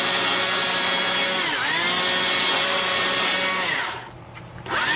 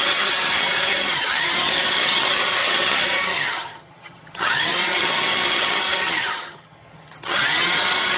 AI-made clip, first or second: second